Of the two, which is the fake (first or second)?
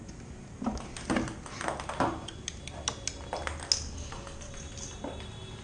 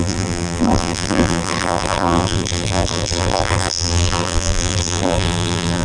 second